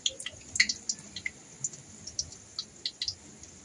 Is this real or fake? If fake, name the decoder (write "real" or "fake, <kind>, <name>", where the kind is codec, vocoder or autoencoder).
real